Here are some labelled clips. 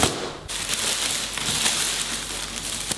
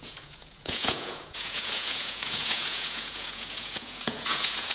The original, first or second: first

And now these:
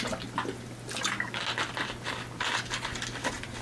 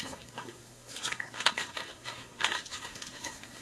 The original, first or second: first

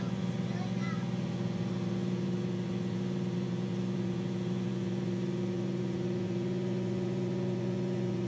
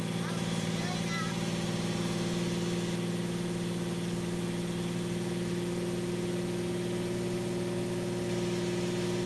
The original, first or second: second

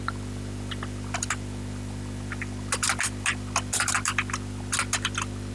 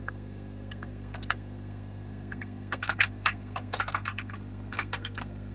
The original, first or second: first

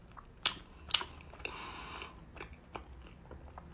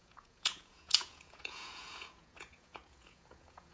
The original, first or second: first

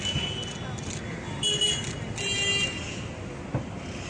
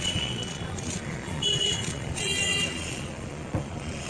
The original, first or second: first